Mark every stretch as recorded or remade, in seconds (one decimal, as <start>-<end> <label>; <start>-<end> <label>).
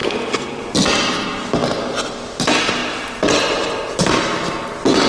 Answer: 0.0-0.6 remade; 0.6-5.1 recorded